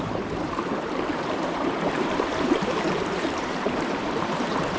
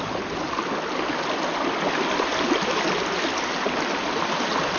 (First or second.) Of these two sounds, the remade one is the first